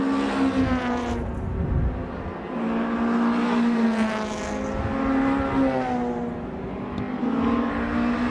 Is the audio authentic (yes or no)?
yes